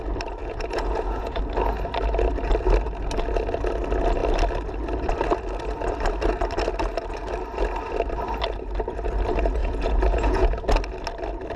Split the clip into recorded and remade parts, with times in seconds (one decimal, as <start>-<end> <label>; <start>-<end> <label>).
0.0-0.4 recorded; 0.4-1.4 remade; 1.4-9.6 recorded; 9.6-10.6 remade; 10.6-11.6 recorded